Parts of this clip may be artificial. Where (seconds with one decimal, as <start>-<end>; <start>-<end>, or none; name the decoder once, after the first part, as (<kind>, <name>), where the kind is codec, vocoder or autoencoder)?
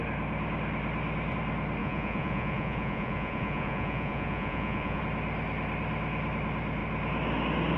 1.8-5.0 (vocoder, Vocos)